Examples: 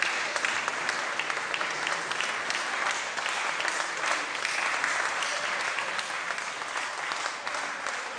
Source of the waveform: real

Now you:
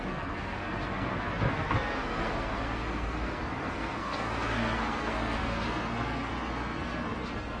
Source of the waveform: fake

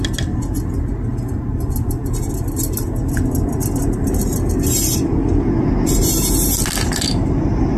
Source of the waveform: real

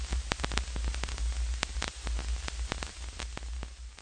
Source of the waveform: real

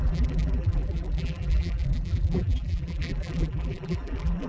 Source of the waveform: fake